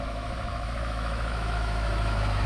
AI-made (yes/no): yes